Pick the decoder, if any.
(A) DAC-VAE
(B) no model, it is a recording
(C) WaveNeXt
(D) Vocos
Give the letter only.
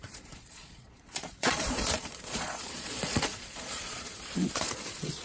D